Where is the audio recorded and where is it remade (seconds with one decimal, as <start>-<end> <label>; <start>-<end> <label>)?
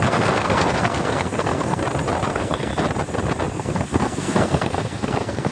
0.0-1.8 remade; 1.8-2.3 recorded; 2.3-2.7 remade; 2.7-3.5 recorded; 3.5-5.5 remade